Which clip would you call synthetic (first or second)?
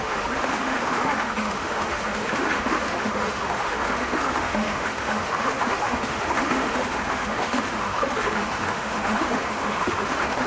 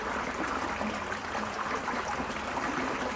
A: first